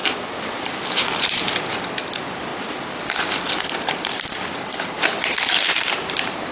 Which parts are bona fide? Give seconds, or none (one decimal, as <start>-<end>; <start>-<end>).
0.8-2.5; 4.1-6.5